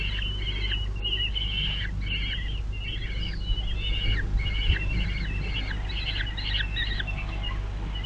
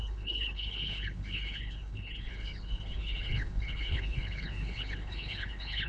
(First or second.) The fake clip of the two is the second